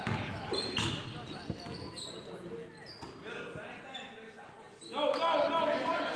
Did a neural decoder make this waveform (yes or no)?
no